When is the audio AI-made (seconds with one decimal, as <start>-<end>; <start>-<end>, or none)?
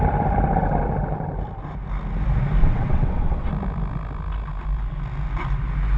2.6-3.5